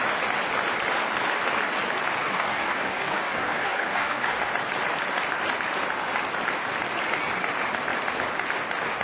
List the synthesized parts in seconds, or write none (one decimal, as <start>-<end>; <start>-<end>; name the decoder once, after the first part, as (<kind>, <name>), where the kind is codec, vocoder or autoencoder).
2.2-4.5 (codec, DAC)